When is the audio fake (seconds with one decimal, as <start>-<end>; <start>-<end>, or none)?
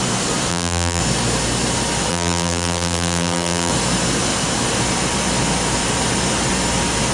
0.5-1.0; 2.1-3.7